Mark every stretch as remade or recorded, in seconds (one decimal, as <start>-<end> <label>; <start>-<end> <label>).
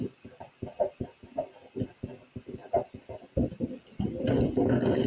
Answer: 0.0-5.1 recorded